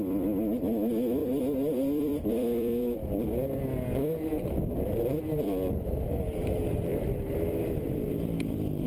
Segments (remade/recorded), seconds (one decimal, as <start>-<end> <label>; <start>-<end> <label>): 0.0-3.0 remade; 3.0-5.7 recorded; 5.7-8.9 remade